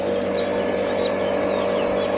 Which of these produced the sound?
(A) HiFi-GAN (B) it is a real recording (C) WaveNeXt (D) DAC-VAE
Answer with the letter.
B